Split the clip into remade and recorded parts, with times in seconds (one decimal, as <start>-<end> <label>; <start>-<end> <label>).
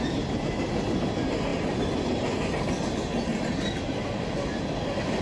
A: 0.0-5.2 recorded